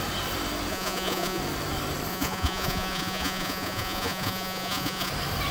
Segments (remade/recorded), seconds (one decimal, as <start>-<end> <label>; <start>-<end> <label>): 0.0-0.7 recorded; 0.7-1.4 remade; 1.4-2.1 recorded; 2.1-5.1 remade; 5.1-5.5 recorded